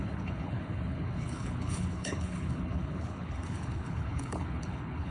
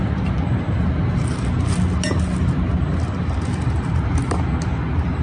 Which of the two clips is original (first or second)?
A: second